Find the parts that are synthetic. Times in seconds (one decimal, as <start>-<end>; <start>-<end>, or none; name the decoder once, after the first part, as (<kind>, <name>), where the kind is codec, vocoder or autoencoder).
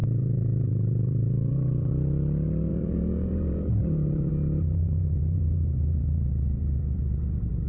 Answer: 0.0-1.9 (vocoder, BigVGAN v2); 2.7-4.3; 4.8-7.7